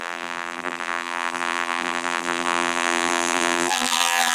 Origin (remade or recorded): remade